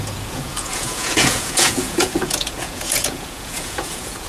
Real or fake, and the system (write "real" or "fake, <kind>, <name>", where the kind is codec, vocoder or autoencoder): fake, vocoder, Vocos